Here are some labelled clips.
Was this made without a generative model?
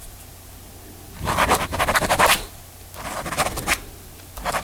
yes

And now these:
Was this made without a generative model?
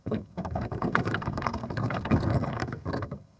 no